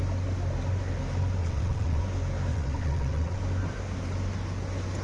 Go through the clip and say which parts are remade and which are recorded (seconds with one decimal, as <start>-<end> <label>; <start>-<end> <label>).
0.0-1.4 recorded; 1.4-2.0 remade; 2.0-2.5 recorded; 2.5-3.4 remade; 3.4-5.0 recorded